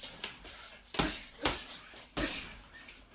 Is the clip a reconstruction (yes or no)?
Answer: no